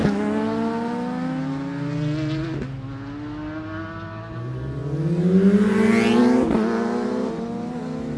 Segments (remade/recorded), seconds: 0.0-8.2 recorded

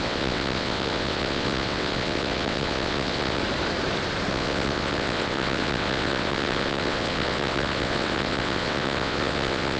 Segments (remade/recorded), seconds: 0.0-3.4 remade; 3.4-4.3 recorded; 4.3-9.8 remade

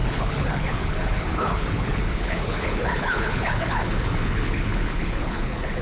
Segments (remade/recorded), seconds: 0.0-5.8 remade

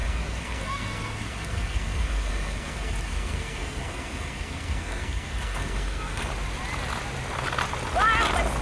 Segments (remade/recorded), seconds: 0.0-6.3 remade; 6.3-8.6 recorded

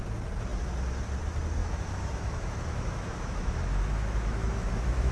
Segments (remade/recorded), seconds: 0.0-1.6 recorded; 1.6-5.1 remade

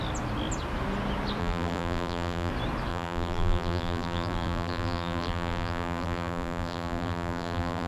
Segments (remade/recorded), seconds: 0.0-1.4 recorded; 1.4-2.5 remade; 2.5-2.9 recorded; 2.9-7.9 remade

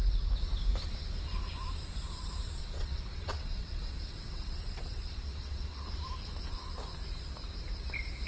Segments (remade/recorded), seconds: 0.0-2.6 recorded; 2.6-5.9 remade; 5.9-8.3 recorded